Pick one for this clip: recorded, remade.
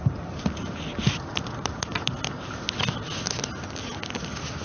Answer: recorded